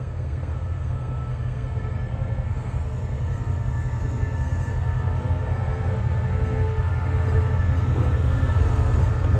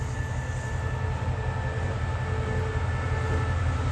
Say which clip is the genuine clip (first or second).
second